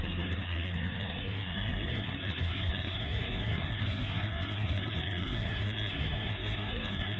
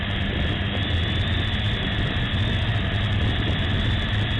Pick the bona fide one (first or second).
second